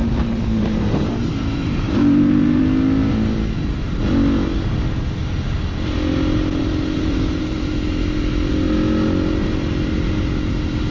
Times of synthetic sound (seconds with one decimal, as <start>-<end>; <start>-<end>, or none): 0.0-2.6; 6.6-7.7